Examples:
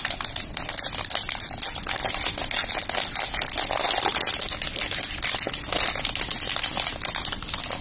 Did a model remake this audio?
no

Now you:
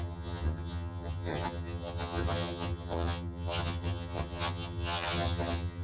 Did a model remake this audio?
yes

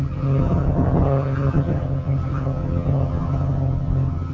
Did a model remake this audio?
yes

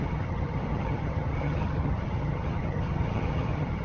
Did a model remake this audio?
yes